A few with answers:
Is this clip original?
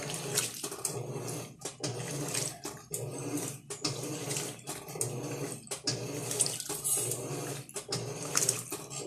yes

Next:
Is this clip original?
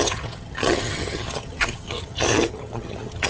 no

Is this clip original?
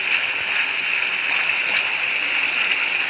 yes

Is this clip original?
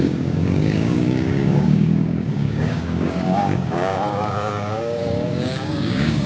no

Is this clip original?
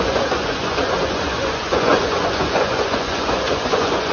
no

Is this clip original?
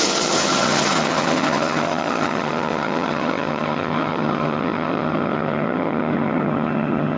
no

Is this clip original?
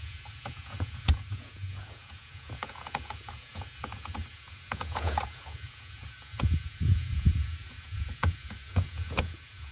no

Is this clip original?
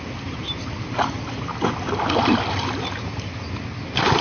yes